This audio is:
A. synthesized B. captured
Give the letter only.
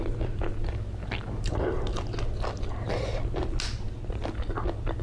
B